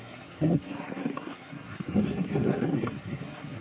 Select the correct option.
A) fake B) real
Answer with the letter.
A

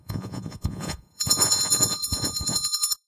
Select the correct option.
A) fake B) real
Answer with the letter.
A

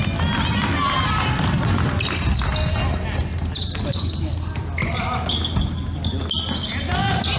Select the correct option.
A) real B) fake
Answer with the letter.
A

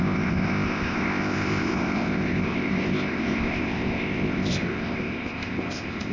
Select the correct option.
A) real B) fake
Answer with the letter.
B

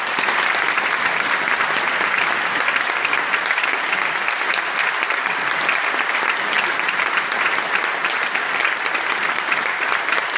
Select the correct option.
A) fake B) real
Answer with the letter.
B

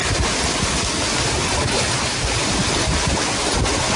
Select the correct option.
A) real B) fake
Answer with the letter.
A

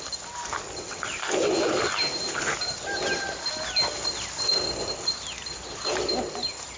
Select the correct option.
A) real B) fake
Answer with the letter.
A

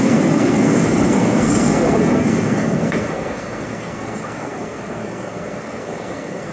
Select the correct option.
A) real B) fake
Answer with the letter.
B